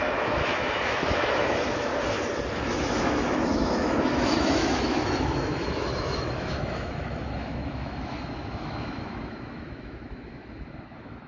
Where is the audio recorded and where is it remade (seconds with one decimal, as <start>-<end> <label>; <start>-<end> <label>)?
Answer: 0.0-1.9 remade; 1.9-2.5 recorded; 2.5-11.3 remade